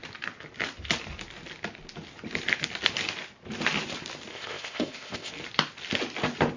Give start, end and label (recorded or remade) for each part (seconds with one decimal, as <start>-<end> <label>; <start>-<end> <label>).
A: 0.0-4.3 recorded; 4.3-5.3 remade; 5.3-6.6 recorded